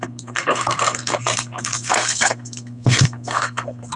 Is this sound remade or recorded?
remade